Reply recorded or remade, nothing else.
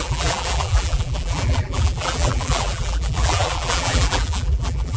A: remade